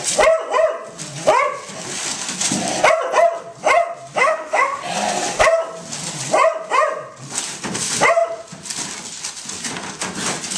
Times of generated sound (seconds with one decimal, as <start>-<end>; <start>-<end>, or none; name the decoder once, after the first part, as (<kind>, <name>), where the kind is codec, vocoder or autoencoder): 4.2-4.8 (autoencoder, DAC-VAE)